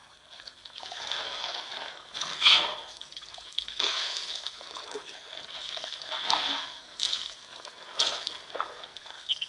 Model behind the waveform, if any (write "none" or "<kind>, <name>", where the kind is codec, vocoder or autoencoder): codec, SNAC